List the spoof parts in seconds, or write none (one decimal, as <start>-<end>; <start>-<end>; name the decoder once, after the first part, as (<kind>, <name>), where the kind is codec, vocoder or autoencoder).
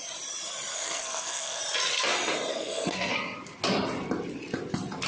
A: 0.7-1.6 (codec, SNAC); 2.5-3.1